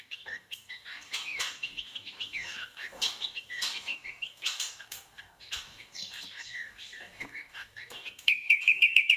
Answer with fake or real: fake